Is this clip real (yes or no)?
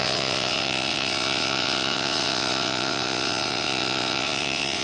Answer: no